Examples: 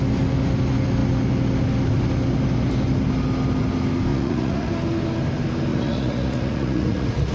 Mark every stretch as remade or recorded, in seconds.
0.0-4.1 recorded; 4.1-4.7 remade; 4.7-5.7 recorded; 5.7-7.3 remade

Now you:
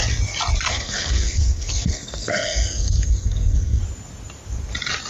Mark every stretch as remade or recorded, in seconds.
0.0-0.7 recorded; 0.7-3.8 remade; 3.8-5.1 recorded

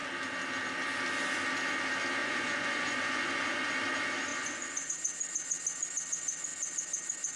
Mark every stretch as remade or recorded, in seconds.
0.0-2.2 recorded; 2.2-3.7 remade; 3.7-4.3 recorded; 4.3-4.9 remade; 4.9-7.4 recorded

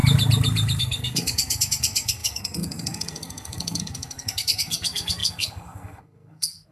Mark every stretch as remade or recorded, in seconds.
0.0-0.8 recorded; 0.8-6.7 remade

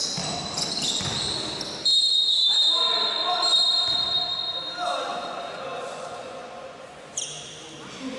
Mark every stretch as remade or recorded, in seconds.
0.0-5.1 recorded; 5.1-7.2 remade; 7.2-8.2 recorded

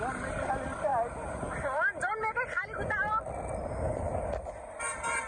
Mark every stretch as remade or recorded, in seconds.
0.0-5.3 recorded

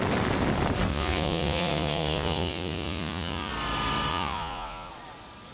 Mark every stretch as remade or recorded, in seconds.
0.0-0.9 recorded; 0.9-3.5 remade; 3.5-4.1 recorded; 4.1-4.9 remade; 4.9-5.5 recorded

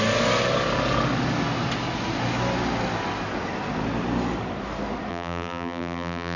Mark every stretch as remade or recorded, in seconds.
0.0-5.1 recorded; 5.1-6.4 remade